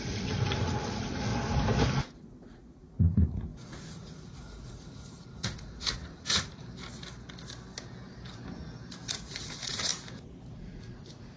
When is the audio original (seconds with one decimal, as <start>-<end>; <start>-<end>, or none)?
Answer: 1.3-1.9; 6.6-9.1; 9.9-10.5